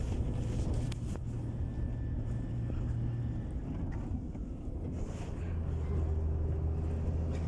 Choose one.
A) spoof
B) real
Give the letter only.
B